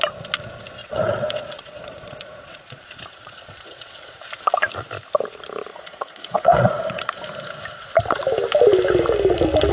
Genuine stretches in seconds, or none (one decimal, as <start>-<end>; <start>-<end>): 0.0-0.8; 4.2-5.7; 7.2-9.7